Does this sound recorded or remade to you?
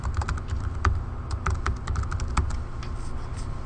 recorded